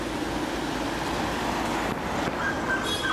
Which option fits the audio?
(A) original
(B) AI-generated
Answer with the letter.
A